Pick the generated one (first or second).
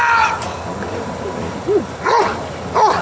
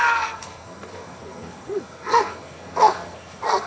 second